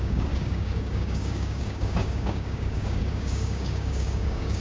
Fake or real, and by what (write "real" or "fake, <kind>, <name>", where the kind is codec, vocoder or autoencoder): fake, codec, DAC